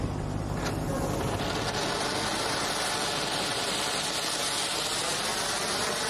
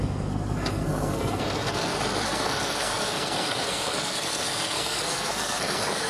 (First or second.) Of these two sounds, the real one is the first